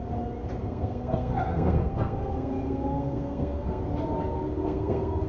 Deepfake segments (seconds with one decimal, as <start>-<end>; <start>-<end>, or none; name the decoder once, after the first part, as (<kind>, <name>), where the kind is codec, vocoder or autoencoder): 0.6-3.8 (codec, SNAC); 4.6-5.3